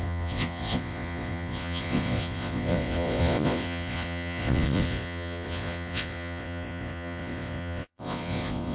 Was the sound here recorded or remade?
remade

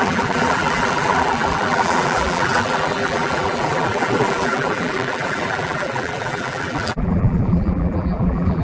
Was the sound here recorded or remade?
remade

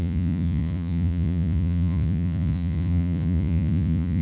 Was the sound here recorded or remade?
remade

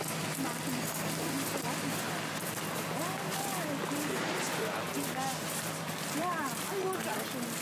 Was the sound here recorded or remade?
recorded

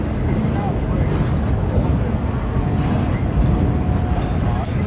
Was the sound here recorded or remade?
recorded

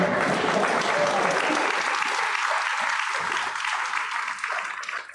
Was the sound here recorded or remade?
recorded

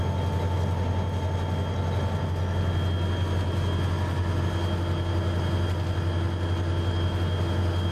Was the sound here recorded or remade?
recorded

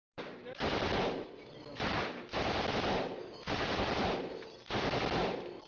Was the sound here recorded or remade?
recorded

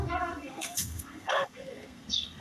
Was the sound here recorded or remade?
remade